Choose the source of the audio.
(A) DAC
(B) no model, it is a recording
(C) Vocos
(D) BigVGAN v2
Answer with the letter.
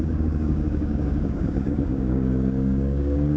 A